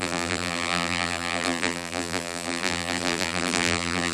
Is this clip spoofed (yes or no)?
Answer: yes